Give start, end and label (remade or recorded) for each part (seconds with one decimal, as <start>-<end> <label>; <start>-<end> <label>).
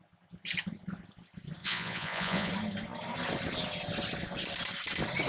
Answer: 0.0-1.6 recorded; 1.6-2.5 remade; 2.5-5.3 recorded